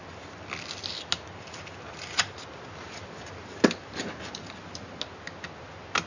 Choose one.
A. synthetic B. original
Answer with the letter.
B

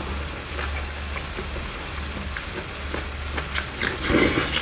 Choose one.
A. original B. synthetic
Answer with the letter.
A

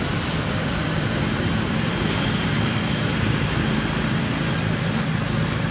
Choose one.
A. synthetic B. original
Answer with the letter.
A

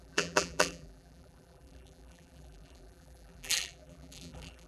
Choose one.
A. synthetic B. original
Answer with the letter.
A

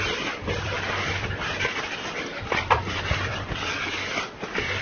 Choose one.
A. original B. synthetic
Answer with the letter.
A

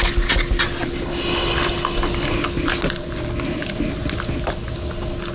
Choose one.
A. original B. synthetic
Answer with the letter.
A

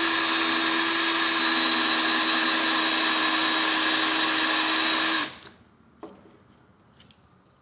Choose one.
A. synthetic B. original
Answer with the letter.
B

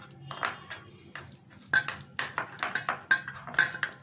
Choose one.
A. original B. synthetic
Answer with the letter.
A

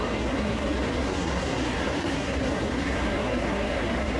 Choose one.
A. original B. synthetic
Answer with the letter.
B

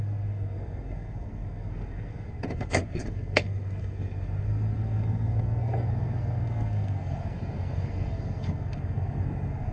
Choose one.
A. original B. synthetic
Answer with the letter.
B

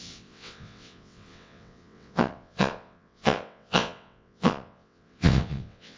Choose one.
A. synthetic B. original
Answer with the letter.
A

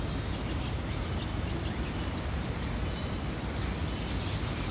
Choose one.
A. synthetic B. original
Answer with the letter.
B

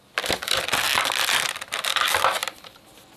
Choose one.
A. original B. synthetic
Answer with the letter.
A